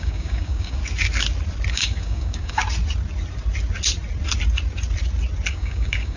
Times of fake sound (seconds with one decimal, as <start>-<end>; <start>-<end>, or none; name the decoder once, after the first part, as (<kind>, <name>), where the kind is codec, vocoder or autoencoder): 0.0-0.8 (codec, DAC); 1.7-2.6; 5.5-6.2